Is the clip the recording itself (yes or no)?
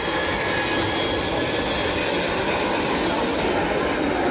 yes